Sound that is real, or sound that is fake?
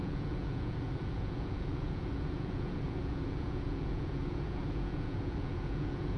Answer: fake